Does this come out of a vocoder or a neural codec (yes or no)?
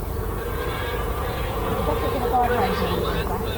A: yes